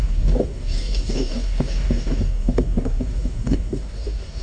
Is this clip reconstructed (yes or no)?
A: yes